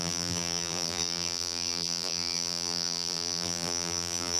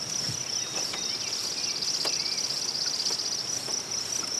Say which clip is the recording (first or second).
second